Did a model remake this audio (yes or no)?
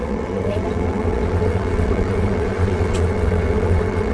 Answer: yes